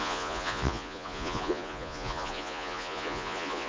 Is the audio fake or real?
fake